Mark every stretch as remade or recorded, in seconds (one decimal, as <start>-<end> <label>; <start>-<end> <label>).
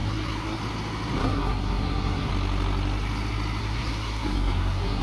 0.0-0.6 remade; 0.6-1.2 recorded; 1.2-2.3 remade; 2.3-3.6 recorded; 3.6-5.0 remade